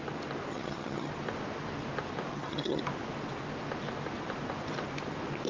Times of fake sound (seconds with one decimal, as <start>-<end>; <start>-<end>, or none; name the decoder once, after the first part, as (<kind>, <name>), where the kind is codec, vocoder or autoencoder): 0.5-1.1 (vocoder, HiFi-GAN); 2.3-2.8